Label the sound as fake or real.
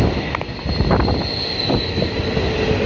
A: real